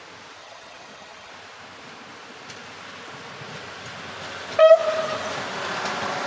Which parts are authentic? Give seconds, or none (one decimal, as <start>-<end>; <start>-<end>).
0.0-0.4; 1.3-6.3